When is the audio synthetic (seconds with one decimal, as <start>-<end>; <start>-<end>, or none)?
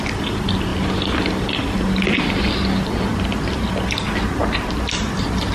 0.7-2.2; 3.1-4.0; 4.4-5.5